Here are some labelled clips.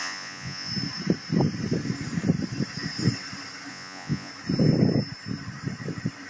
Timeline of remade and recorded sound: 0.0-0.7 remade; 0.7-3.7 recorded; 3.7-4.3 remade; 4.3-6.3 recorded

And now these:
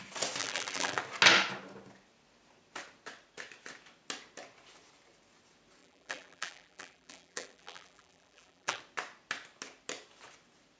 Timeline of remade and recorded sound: 0.0-0.4 recorded; 0.4-1.0 remade; 1.0-5.8 recorded; 5.8-8.8 remade; 8.8-10.8 recorded

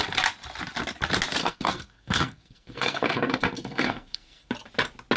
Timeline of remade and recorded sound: 0.0-1.4 recorded; 1.4-4.5 remade; 4.5-5.2 recorded

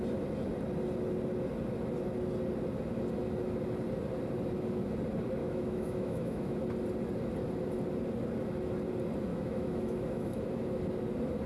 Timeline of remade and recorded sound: 0.0-5.4 recorded; 5.4-6.6 remade; 6.6-9.3 recorded; 9.3-10.4 remade; 10.4-11.5 recorded

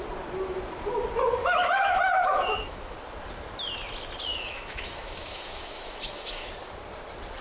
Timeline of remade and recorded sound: 0.0-1.4 recorded; 1.4-2.8 remade; 2.8-4.3 recorded; 4.3-6.5 remade; 6.5-7.4 recorded

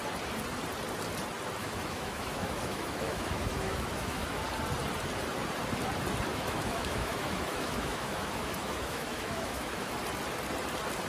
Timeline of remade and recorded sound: 0.0-1.6 recorded; 1.6-4.4 remade; 4.4-6.3 recorded; 6.3-10.0 remade; 10.0-11.1 recorded